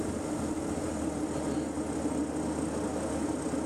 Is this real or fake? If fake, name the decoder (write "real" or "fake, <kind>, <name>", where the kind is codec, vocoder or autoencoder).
real